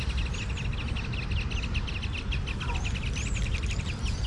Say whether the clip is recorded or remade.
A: recorded